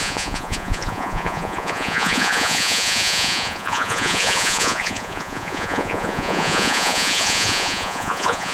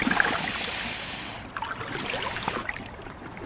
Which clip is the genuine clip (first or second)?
second